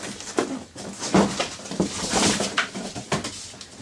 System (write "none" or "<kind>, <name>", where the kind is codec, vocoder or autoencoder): none